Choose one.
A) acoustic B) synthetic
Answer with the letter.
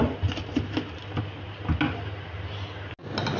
A